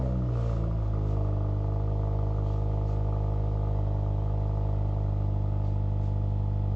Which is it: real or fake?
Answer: real